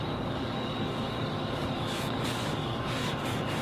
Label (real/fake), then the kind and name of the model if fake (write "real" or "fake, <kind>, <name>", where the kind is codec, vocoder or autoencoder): fake, codec, DAC